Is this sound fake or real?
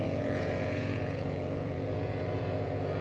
fake